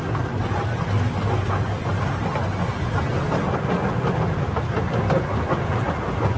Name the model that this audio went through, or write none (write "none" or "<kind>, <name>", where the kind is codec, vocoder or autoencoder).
none